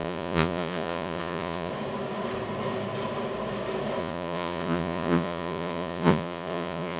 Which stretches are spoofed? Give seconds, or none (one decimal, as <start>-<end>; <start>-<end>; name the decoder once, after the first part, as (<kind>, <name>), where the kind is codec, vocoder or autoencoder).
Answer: 0.0-1.7 (vocoder, Vocos); 4.0-7.0